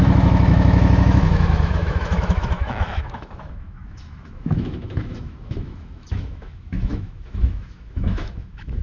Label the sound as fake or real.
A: fake